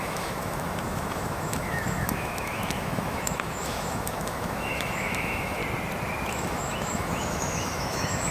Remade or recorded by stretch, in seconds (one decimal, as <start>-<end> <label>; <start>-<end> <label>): 0.0-5.6 remade; 5.6-6.3 recorded; 6.3-8.3 remade